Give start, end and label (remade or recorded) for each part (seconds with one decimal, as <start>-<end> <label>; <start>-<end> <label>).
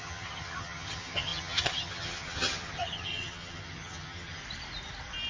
0.0-4.4 remade; 4.4-5.3 recorded